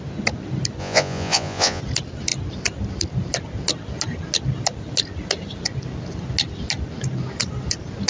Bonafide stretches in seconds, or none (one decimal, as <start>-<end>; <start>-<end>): 0.0-0.8; 1.8-8.1